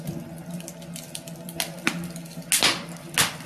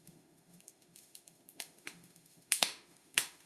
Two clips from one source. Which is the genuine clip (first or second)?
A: first